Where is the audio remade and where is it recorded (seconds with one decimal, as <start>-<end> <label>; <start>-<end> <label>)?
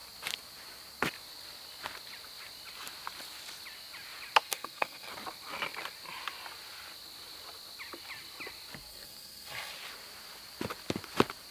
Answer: 0.0-4.4 recorded; 4.4-5.1 remade; 5.1-8.9 recorded; 8.9-9.7 remade; 9.7-11.5 recorded